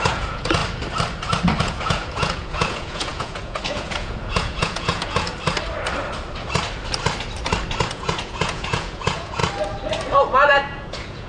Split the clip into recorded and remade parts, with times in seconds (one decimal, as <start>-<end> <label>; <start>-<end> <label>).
0.0-0.6 remade; 0.6-1.6 recorded; 1.6-5.3 remade; 5.3-7.9 recorded; 7.9-9.4 remade; 9.4-10.5 recorded; 10.5-11.3 remade

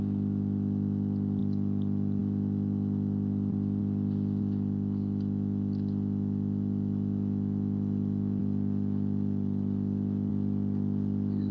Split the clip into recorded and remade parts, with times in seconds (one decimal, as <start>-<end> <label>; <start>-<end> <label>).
0.0-11.5 recorded